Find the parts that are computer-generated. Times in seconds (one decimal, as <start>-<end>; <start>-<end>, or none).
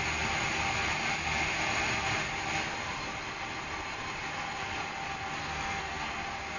5.4-6.1